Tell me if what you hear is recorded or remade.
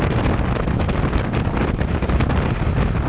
recorded